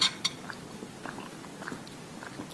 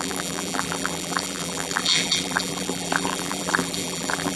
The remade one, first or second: second